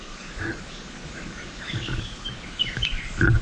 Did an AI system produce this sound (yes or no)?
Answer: yes